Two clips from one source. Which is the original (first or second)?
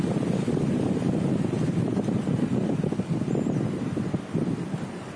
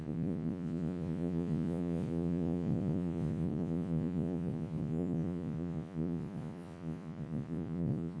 first